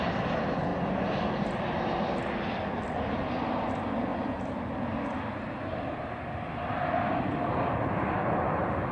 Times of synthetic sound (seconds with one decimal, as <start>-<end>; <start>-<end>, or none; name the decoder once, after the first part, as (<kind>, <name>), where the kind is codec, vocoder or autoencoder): none

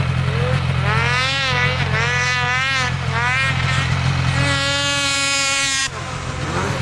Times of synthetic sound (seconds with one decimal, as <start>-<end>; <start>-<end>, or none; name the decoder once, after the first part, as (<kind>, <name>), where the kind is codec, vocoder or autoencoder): none

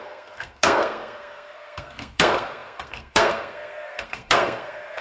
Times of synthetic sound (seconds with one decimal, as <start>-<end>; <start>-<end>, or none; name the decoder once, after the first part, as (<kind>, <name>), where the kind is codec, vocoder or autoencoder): 0.0-5.0 (codec, SNAC)

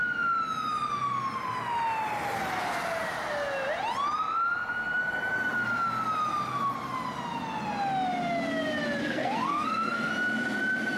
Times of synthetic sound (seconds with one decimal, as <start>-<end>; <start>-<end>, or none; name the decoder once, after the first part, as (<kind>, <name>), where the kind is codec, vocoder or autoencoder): 9.0-10.1 (codec, SNAC)

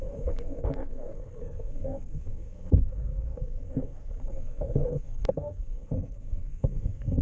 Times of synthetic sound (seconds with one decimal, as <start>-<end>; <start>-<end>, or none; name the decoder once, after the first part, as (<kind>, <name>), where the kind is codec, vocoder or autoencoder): 0.0-7.2 (codec, SNAC)

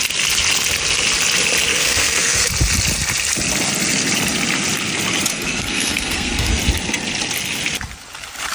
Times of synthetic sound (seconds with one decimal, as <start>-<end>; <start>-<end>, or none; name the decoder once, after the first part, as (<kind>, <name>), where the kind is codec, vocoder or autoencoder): 1.7-2.5 (codec, SNAC); 5.3-6.6

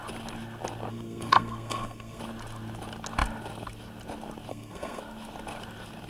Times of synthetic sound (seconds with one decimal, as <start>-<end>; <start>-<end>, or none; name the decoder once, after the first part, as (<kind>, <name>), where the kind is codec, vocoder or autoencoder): 0.9-2.2 (codec, SNAC); 4.5-5.0

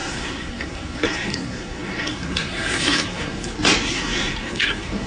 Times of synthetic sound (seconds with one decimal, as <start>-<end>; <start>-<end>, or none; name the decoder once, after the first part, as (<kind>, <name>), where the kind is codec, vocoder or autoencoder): 0.0-5.1 (codec, SNAC)